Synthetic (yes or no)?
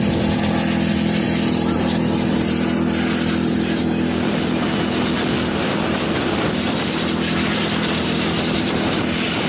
no